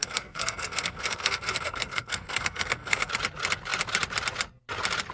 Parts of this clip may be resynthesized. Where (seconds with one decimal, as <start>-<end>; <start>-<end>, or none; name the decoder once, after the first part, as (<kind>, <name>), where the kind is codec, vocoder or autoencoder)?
0.0-3.1 (codec, SNAC)